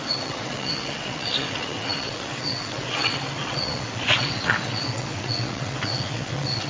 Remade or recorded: remade